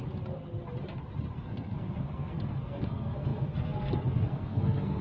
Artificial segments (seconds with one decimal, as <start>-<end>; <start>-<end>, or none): 1.3-5.0